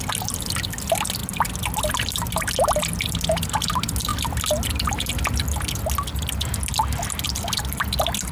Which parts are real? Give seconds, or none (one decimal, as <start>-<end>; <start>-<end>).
0.0-8.3